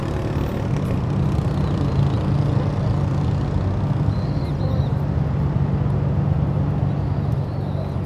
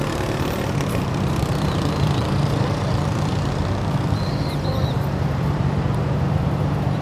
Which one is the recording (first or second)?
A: first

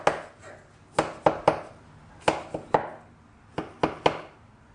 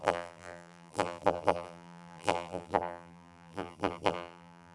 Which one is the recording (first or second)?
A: first